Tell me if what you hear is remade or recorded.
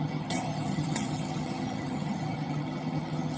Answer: remade